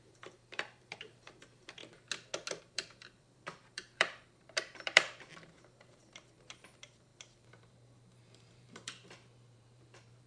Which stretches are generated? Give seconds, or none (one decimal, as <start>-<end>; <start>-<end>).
0.0-1.8; 2.6-7.1; 7.6-10.3